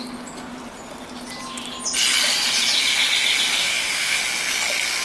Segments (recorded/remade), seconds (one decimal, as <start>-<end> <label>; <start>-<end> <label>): 0.0-3.6 recorded; 3.6-4.2 remade; 4.2-5.0 recorded